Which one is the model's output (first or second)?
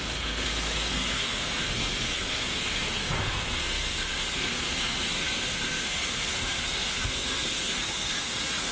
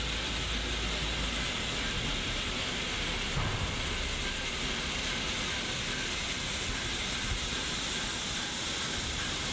first